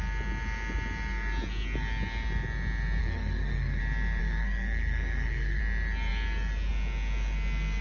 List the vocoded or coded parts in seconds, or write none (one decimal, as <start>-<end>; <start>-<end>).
3.0-3.8; 4.2-5.6